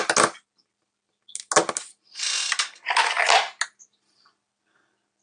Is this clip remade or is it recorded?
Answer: recorded